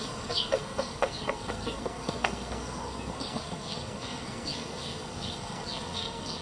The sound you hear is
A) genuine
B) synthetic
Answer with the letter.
B